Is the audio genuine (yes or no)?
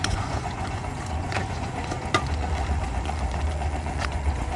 no